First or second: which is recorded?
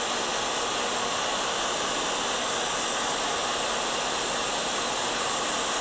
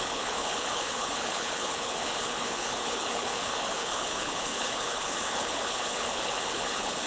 first